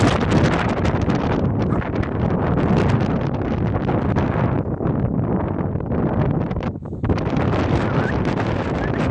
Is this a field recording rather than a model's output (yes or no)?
yes